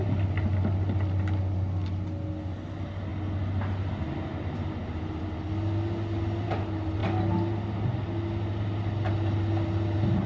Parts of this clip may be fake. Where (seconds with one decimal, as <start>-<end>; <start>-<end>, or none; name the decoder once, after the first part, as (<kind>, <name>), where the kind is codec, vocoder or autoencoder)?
none